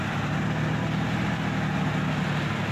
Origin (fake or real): real